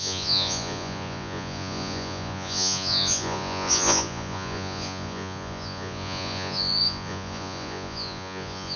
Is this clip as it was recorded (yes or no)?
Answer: no